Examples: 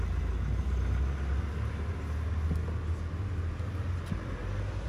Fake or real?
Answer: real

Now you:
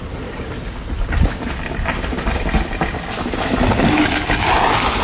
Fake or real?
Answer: real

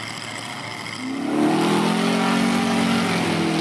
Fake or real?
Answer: real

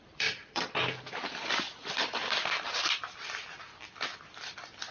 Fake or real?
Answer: fake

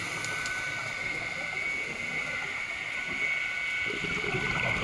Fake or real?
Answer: real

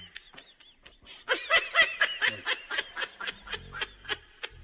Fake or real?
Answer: real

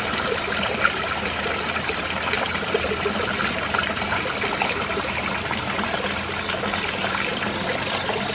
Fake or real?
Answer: fake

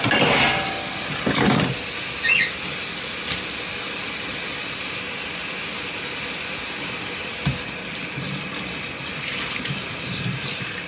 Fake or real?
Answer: real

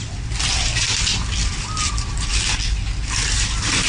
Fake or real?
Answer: real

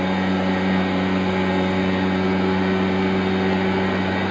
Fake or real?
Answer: real